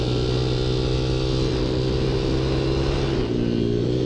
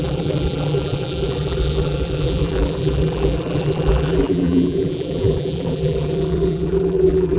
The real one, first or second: first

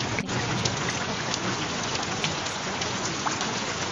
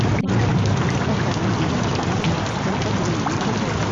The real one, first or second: second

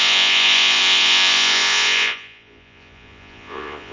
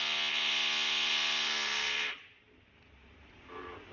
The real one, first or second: second